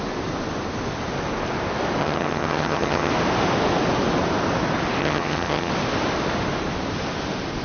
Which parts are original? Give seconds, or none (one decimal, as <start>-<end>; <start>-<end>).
0.0-2.0; 3.1-5.0; 5.7-7.6